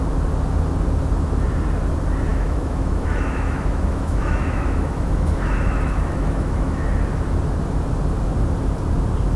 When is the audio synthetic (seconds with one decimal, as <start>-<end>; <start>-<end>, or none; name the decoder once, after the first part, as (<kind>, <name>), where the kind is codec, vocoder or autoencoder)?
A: 2.3-6.8 (autoencoder, DAC-VAE)